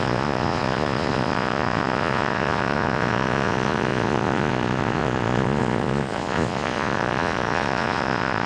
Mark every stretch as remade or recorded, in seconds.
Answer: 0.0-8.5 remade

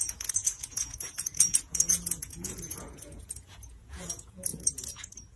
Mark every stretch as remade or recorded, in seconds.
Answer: 0.0-5.4 remade

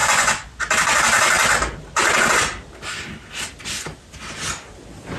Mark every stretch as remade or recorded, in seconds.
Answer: 0.0-0.6 remade; 0.6-5.2 recorded

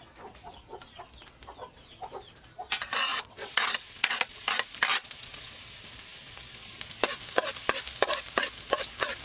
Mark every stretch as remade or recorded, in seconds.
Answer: 0.0-3.1 recorded; 3.1-4.4 remade; 4.4-4.9 recorded; 4.9-5.4 remade; 5.4-9.2 recorded

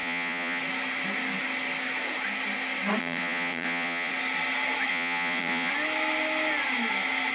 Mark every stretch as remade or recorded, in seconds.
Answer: 0.0-0.6 remade; 0.6-3.0 recorded; 3.0-4.1 remade; 4.1-4.9 recorded; 4.9-5.7 remade; 5.7-7.3 recorded

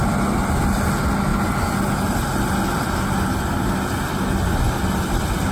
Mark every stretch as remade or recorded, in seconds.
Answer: 0.0-5.5 recorded